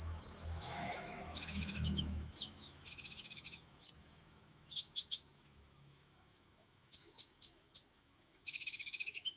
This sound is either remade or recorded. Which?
remade